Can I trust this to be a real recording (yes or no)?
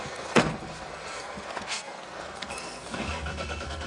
no